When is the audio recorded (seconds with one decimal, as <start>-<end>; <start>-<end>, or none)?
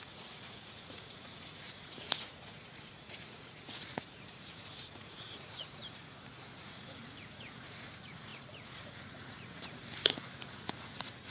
9.8-10.3